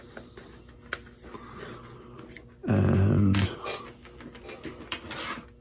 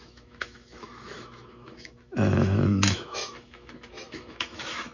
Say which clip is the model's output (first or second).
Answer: second